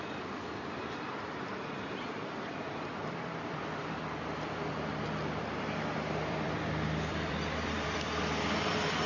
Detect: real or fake fake